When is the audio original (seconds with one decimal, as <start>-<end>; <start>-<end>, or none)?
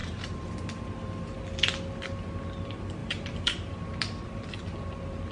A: 0.5-3.0; 3.8-5.3